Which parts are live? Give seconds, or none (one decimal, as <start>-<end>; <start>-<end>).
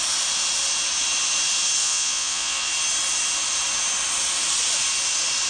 0.0-1.8; 2.7-5.5